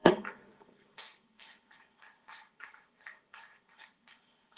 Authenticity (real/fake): fake